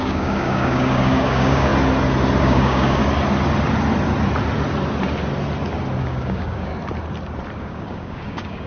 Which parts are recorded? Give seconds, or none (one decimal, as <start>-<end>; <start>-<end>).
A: 1.7-2.4; 3.0-6.0; 6.7-7.6